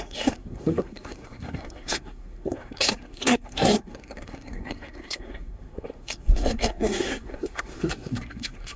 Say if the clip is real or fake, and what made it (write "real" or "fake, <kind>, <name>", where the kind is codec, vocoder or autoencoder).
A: fake, codec, SNAC